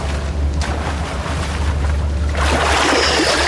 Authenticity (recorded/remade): recorded